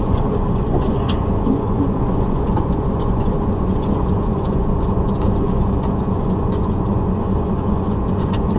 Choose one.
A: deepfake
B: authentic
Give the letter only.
A